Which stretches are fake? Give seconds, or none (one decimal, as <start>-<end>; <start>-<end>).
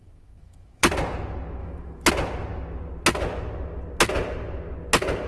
0.0-0.9; 1.6-2.1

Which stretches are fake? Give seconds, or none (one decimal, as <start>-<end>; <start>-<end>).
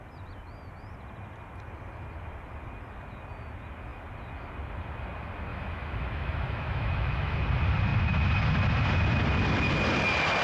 5.5-7.4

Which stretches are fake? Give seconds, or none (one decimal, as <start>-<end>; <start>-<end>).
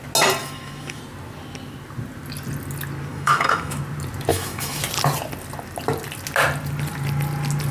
0.4-1.0; 3.1-3.8; 4.3-4.8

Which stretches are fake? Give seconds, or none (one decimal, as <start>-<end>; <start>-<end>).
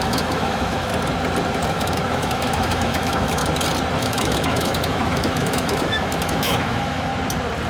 0.0-0.9; 1.7-3.4; 4.0-7.1